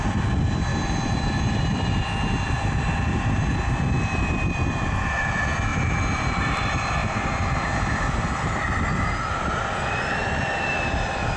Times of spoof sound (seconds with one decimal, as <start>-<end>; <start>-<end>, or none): 0.7-2.1; 5.7-6.4